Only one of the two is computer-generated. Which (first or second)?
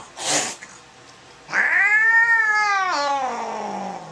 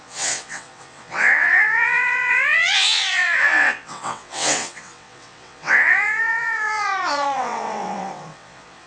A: second